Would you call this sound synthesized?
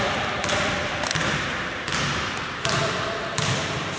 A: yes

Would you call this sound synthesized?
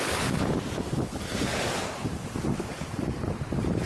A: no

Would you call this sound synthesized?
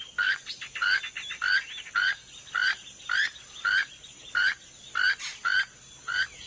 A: no